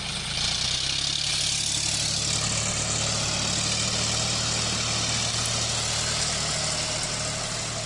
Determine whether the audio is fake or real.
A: real